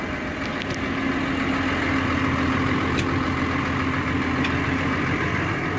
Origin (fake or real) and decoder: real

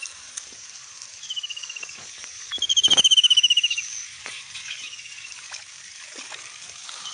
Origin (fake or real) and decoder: fake, codec, DAC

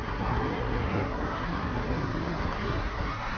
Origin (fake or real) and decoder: fake, codec, SNAC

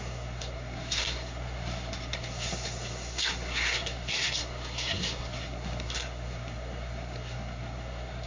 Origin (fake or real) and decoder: fake, codec, SNAC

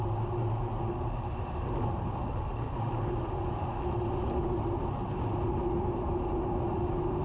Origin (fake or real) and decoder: real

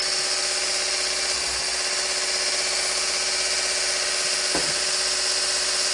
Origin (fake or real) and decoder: real